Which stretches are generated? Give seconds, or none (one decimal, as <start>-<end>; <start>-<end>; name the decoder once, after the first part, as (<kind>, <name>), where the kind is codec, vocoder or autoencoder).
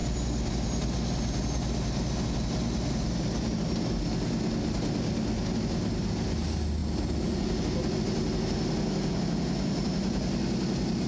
none